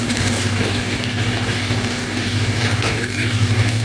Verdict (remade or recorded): remade